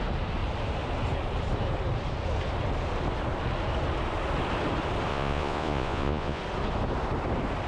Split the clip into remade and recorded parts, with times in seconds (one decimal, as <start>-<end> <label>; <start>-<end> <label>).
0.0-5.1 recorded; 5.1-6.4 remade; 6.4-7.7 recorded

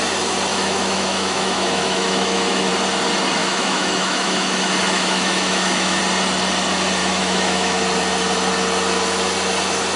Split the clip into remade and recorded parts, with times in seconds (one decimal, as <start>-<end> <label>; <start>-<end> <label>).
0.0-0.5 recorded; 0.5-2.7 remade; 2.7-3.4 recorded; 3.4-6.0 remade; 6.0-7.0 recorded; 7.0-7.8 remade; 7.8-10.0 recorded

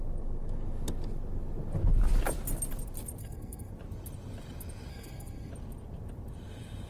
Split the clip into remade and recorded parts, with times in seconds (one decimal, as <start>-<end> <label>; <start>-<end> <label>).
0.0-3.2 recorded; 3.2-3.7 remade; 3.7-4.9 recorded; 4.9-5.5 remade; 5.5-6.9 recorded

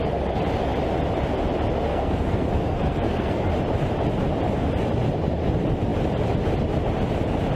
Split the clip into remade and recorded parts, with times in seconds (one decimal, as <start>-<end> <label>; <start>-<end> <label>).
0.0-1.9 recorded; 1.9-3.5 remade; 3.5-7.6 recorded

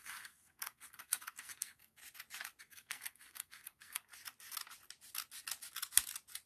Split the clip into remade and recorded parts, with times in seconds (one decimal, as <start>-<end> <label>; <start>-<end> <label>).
0.0-2.0 remade; 2.0-2.6 recorded; 2.6-4.1 remade; 4.1-6.5 recorded

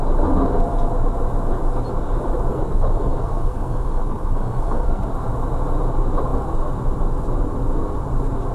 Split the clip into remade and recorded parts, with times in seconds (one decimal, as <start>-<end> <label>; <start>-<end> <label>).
0.0-2.5 recorded; 2.5-5.0 remade; 5.0-8.5 recorded